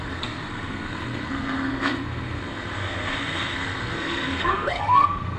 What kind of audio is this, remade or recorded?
remade